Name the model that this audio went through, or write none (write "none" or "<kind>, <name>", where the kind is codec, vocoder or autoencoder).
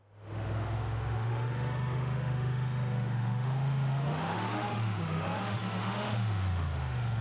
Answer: autoencoder, DAC-VAE